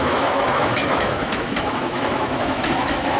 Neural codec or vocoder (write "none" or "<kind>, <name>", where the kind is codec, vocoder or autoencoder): autoencoder, DAC-VAE